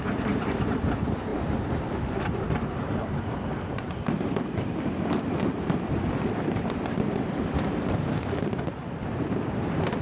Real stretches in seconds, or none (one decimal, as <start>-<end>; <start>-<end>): none